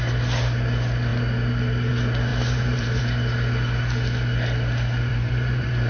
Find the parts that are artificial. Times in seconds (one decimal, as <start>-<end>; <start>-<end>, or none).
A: 2.3-3.0; 5.1-5.9